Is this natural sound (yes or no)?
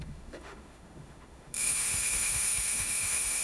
no